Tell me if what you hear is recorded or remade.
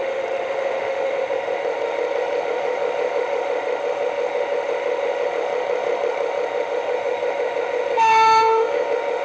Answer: remade